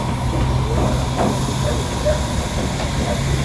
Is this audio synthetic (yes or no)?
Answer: no